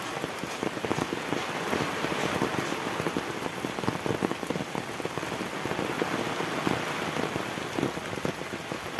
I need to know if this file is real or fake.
real